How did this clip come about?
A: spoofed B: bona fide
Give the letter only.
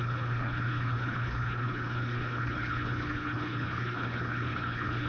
A